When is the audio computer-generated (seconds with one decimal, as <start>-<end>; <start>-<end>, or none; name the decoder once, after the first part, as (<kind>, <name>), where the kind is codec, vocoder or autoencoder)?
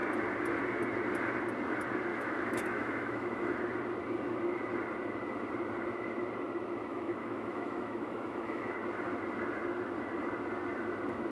2.1-3.6 (autoencoder, DAC-VAE); 6.9-8.8